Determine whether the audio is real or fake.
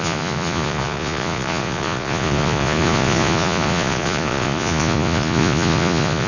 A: fake